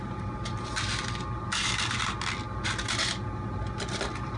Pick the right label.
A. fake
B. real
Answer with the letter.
B